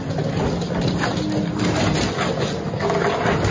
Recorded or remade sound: recorded